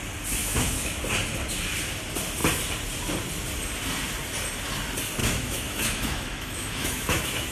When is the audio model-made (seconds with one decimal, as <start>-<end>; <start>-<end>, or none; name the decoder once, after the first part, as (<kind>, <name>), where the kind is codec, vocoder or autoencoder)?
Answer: 0.4-1.0 (autoencoder, DAC-VAE); 5.2-7.5

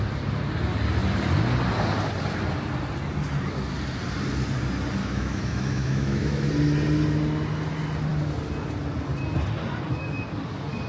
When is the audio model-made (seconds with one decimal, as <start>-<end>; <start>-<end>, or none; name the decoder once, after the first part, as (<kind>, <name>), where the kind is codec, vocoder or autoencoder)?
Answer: 5.0-6.5 (autoencoder, DAC-VAE)